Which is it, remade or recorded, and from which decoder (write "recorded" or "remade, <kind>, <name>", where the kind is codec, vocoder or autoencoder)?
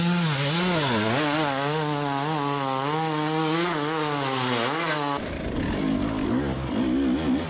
recorded